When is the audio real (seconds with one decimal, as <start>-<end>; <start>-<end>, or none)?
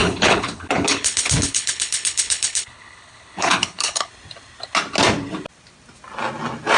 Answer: 4.1-6.8